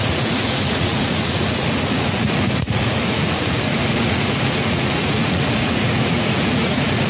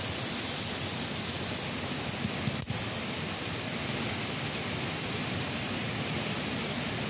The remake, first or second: first